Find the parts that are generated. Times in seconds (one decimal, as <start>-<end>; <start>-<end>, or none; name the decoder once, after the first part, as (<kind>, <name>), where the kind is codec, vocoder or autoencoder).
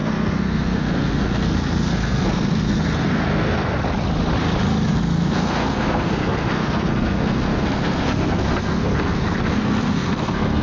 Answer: 0.0-3.8 (codec, SNAC); 4.9-10.6